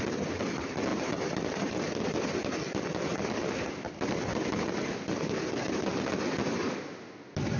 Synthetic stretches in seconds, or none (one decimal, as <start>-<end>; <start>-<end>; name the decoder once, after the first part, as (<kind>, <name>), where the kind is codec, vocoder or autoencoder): 0.9-2.4 (vocoder, BigVGAN v2); 3.1-5.9